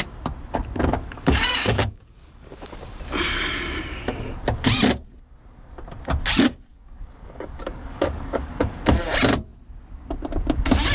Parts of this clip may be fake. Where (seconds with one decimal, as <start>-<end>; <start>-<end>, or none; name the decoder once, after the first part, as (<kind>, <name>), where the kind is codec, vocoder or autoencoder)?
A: 0.9-2.8 (codec, DAC); 6.7-8.8